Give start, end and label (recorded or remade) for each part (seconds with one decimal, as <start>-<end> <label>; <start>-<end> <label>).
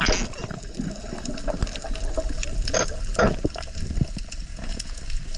0.0-4.5 recorded; 4.5-5.0 remade; 5.0-5.4 recorded